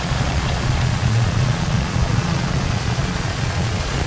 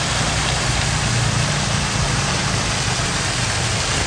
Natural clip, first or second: second